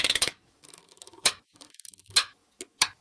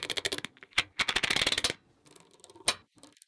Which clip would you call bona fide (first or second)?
second